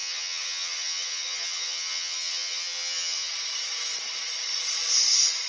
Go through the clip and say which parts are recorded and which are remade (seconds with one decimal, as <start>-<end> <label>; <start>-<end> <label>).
0.0-3.3 remade; 3.3-5.5 recorded